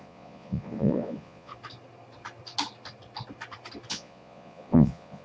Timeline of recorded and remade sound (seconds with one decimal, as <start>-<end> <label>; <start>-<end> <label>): 0.0-1.5 remade; 1.5-3.9 recorded; 3.9-5.2 remade